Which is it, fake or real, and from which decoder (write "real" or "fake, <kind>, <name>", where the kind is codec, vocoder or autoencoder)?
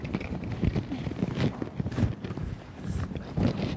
fake, vocoder, BigVGAN v2